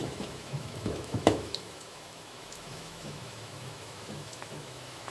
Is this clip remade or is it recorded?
remade